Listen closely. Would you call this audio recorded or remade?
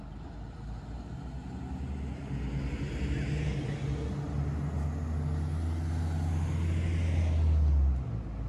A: recorded